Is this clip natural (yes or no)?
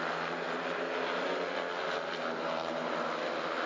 yes